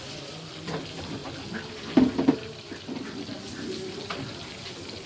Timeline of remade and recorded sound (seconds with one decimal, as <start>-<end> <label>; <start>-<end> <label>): 0.0-5.1 recorded